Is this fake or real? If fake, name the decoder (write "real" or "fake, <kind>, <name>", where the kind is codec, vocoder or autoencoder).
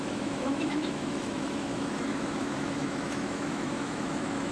fake, autoencoder, DAC-VAE